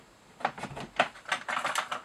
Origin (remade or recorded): recorded